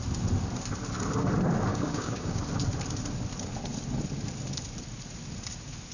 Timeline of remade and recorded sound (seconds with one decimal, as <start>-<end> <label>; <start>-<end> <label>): 0.0-1.7 recorded; 1.7-2.4 remade; 2.4-5.9 recorded